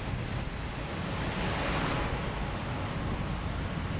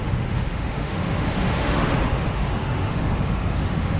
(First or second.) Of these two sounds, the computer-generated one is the second